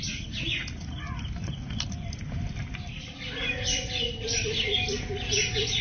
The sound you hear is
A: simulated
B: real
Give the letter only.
B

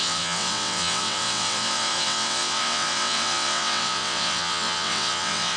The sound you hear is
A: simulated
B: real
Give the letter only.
A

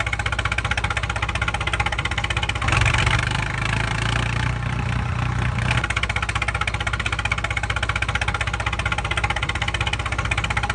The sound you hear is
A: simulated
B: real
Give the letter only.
B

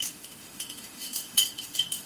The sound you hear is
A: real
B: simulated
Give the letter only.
B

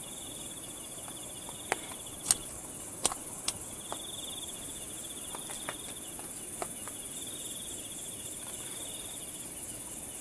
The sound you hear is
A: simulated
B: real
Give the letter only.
B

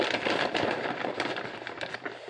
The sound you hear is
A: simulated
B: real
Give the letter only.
A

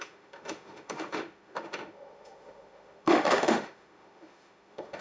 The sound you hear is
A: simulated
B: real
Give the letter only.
A